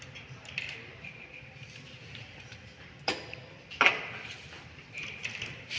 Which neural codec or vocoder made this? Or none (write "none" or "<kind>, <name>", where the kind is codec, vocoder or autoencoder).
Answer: vocoder, BigVGAN v2